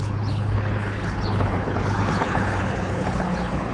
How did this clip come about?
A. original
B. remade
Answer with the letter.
B